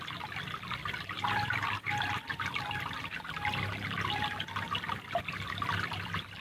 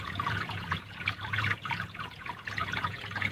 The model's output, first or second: second